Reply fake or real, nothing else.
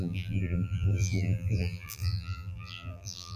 fake